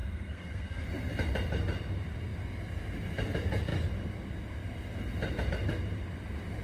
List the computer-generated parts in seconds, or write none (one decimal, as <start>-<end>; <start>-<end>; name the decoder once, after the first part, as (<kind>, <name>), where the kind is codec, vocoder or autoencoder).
0.0-0.8 (codec, SNAC)